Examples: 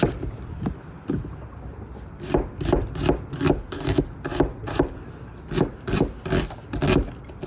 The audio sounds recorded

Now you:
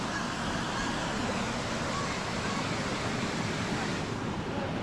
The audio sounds recorded